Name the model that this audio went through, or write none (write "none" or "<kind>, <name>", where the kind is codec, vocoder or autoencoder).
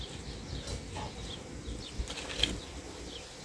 none